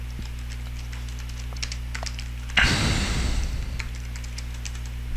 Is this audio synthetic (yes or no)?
no